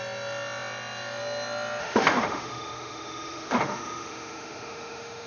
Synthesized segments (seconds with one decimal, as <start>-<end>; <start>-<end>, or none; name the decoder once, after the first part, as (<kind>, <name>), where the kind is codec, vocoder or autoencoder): 1.8-5.3 (autoencoder, DAC-VAE)